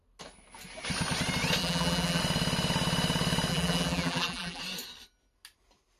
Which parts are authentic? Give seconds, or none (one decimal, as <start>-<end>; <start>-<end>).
0.0-1.6; 2.2-3.5; 4.6-6.0